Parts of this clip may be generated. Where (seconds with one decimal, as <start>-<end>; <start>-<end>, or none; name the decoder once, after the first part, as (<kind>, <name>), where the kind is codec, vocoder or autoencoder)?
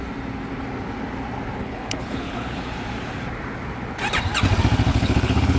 1.6-2.6 (codec, HILCodec); 4.9-5.6